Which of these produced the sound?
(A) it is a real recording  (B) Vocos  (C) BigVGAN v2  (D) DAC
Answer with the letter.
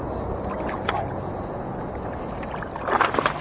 A